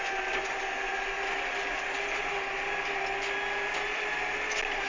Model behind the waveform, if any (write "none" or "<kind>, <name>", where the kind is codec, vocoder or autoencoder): none